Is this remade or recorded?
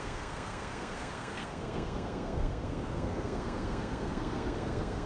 remade